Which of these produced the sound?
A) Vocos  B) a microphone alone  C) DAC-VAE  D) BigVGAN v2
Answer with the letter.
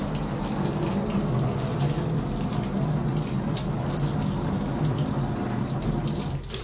B